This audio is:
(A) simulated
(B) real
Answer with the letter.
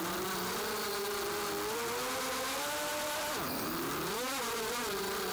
B